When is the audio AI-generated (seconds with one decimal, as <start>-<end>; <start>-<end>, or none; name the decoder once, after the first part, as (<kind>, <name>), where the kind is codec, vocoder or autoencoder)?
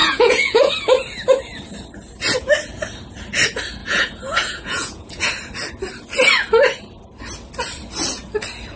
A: 0.0-0.7 (vocoder, Vocos); 3.8-5.3